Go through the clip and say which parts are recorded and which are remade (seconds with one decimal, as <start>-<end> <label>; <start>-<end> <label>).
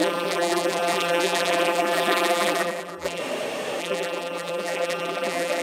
0.0-3.2 remade; 3.2-3.8 recorded; 3.8-5.6 remade